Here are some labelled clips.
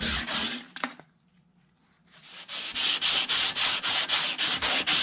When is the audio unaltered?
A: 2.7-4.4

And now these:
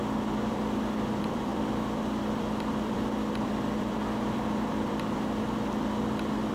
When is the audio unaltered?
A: none

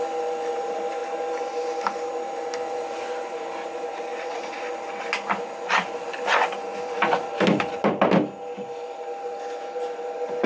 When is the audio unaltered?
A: 0.0-4.1; 4.7-6.7; 7.6-10.5